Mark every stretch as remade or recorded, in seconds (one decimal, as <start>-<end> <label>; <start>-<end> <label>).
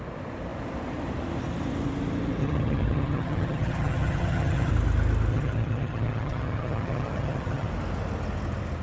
0.0-2.4 recorded; 2.4-4.7 remade; 4.7-5.3 recorded; 5.3-7.7 remade; 7.7-8.8 recorded